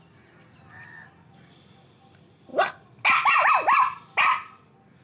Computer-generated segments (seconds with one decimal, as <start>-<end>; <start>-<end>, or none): none